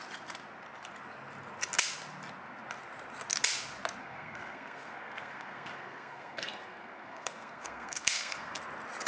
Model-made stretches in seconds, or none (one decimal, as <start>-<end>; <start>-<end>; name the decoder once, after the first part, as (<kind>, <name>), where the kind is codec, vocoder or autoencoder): 4.0-8.6 (codec, SNAC)